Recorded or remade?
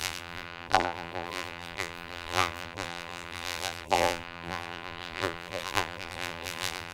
remade